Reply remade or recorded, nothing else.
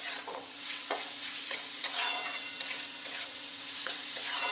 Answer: remade